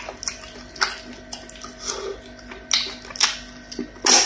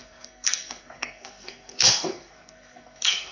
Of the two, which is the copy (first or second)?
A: second